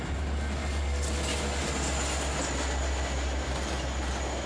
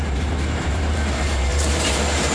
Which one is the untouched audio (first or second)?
first